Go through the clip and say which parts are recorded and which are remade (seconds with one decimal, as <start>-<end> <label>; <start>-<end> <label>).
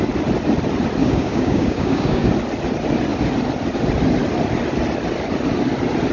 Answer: 0.0-1.0 recorded; 1.0-2.3 remade; 2.3-6.1 recorded